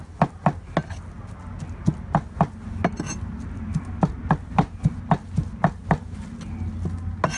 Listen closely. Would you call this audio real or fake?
real